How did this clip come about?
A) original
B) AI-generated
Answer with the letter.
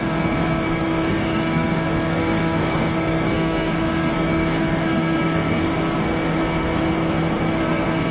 B